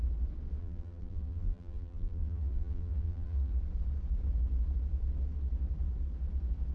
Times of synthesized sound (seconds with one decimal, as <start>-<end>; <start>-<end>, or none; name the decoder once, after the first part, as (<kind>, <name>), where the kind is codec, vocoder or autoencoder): 0.6-3.5 (vocoder, BigVGAN v2)